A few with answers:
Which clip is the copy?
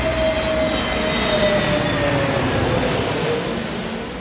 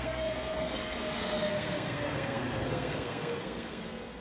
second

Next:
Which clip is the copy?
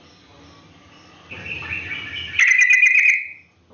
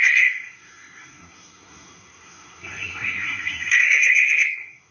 second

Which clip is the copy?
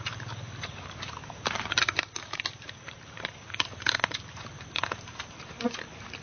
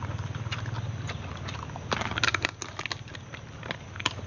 first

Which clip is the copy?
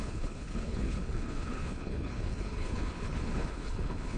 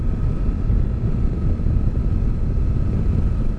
first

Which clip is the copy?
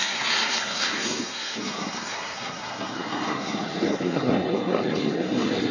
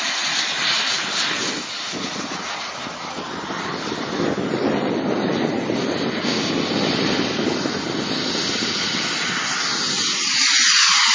first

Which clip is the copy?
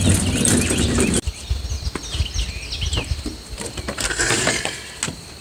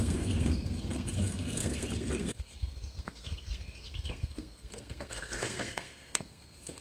second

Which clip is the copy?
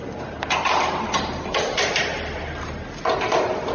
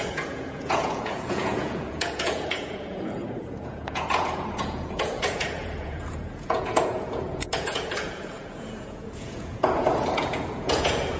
second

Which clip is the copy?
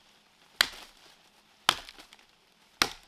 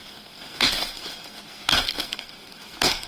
second